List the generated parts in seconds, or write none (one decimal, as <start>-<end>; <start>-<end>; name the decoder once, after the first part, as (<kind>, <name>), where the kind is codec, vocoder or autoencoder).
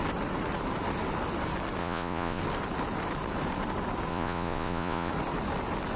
1.8-2.4 (vocoder, Vocos); 4.1-5.1